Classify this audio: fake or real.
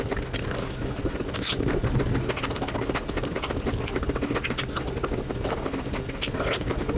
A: real